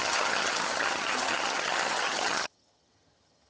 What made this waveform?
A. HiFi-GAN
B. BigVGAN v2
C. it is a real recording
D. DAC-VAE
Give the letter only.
A